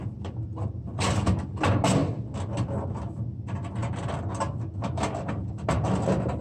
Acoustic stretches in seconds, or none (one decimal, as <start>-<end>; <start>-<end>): 0.0-6.4